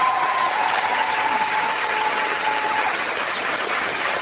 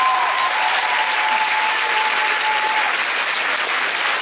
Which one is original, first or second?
second